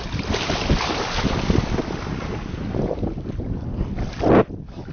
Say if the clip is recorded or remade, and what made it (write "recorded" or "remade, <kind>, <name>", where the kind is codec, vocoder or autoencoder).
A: recorded